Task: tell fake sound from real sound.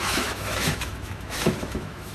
fake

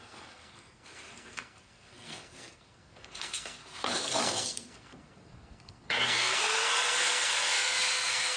fake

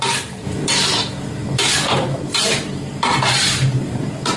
fake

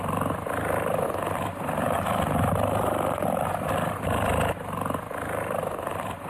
fake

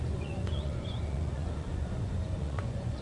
fake